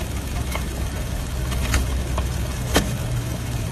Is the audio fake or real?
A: fake